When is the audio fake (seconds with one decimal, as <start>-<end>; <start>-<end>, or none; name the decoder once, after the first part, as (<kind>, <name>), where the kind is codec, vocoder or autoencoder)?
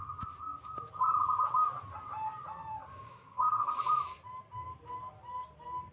3.3-3.8 (codec, SNAC)